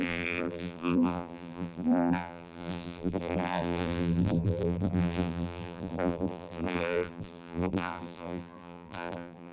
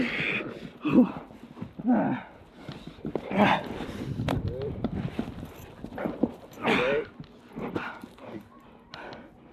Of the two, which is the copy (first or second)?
first